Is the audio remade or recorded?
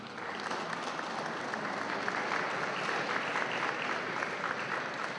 recorded